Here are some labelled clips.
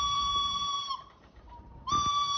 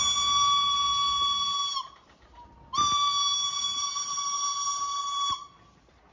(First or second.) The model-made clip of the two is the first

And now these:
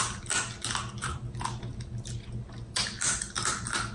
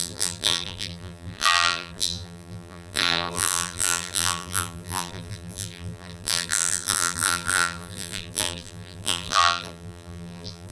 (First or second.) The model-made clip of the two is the second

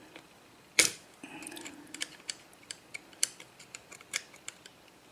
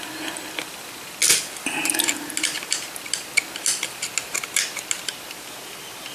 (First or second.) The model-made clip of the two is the first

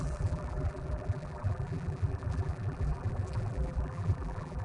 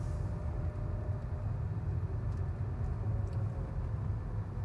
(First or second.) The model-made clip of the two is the first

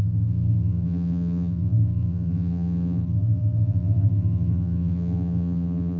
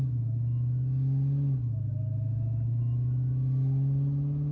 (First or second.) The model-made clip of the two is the first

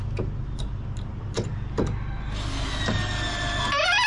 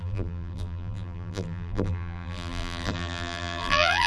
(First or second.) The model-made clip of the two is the second